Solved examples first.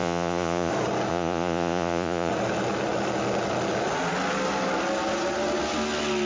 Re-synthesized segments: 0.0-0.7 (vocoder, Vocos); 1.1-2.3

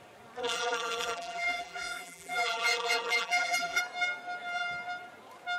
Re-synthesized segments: 0.4-3.8 (vocoder, BigVGAN v2)

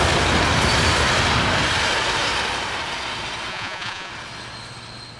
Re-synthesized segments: 3.5-4.1 (vocoder, Vocos)

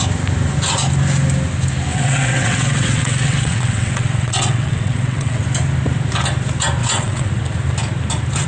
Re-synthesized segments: 1.9-5.4 (vocoder, WaveNeXt); 6.8-7.3

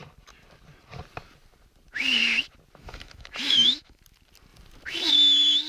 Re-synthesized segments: 2.8-4.0 (autoencoder, DAC-VAE)

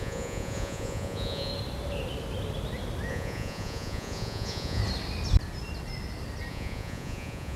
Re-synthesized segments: 0.0-1.5 (vocoder, Vocos); 3.1-4.8; 6.5-7.6

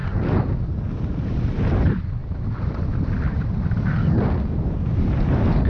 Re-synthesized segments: none